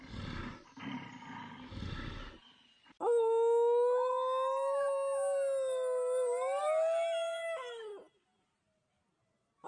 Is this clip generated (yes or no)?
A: no